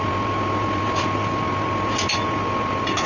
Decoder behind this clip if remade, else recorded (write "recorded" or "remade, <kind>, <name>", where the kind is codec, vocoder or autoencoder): recorded